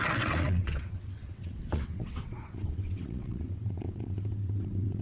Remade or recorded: remade